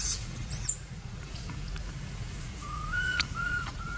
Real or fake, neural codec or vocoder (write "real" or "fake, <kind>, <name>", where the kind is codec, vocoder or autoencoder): fake, vocoder, Vocos